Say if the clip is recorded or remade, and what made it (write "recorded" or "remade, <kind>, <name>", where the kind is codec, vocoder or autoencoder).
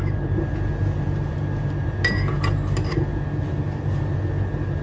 recorded